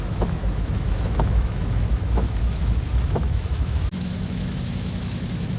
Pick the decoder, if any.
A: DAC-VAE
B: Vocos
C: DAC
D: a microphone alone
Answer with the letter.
A